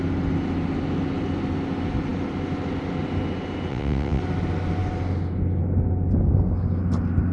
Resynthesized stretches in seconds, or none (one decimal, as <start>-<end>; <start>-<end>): 3.7-4.2